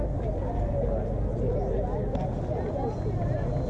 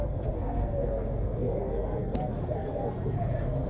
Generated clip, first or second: second